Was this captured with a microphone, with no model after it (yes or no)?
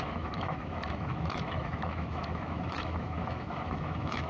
no